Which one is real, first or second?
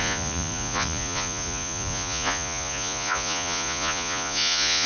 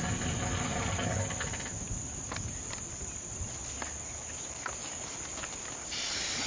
second